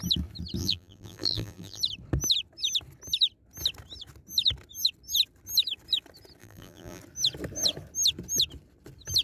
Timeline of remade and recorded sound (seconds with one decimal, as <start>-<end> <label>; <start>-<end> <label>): 0.0-0.6 recorded; 0.6-1.8 remade; 1.8-6.4 recorded; 6.4-7.0 remade; 7.0-9.2 recorded